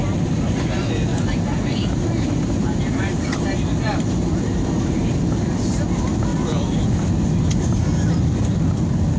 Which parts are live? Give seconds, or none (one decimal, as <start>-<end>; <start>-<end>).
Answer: 0.0-1.1; 5.8-6.3; 7.0-9.2